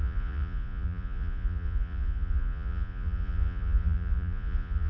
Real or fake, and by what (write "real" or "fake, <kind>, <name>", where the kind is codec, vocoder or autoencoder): fake, vocoder, Vocos